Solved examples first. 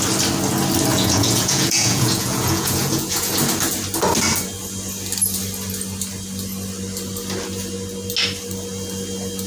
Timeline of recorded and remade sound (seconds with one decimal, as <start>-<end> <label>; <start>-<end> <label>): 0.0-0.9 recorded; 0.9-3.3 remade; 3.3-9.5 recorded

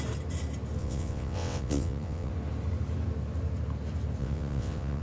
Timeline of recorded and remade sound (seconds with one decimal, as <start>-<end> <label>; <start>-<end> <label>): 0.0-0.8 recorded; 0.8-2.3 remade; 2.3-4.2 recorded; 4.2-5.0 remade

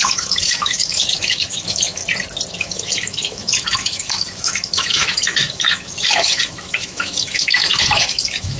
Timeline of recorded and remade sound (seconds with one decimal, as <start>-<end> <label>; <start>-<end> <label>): 0.0-2.0 remade; 2.0-2.6 recorded; 2.6-8.6 remade

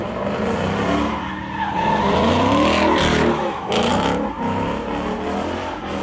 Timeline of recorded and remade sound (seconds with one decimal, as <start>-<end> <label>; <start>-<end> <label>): 0.0-3.1 recorded; 3.1-3.9 remade; 3.9-6.0 recorded

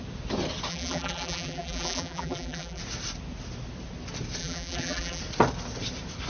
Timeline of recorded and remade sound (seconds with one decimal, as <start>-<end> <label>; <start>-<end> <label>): 0.0-0.7 recorded; 0.7-2.8 remade; 2.8-4.4 recorded; 4.4-5.2 remade; 5.2-6.3 recorded

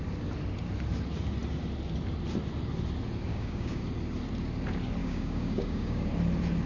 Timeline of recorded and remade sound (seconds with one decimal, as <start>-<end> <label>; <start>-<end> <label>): 0.0-3.3 recorded; 3.3-3.8 remade; 3.8-5.0 recorded; 5.0-6.1 remade; 6.1-6.7 recorded

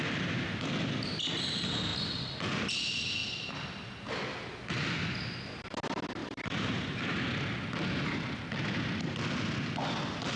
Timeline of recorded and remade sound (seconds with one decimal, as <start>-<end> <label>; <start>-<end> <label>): 0.0-6.2 recorded; 6.2-7.0 remade; 7.0-10.4 recorded